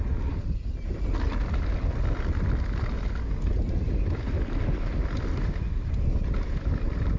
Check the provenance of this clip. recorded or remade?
recorded